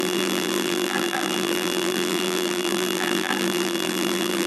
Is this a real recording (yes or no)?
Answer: no